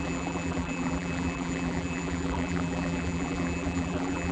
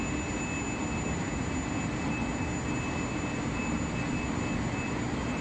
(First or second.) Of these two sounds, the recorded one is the second